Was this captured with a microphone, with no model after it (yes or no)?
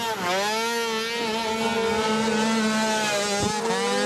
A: yes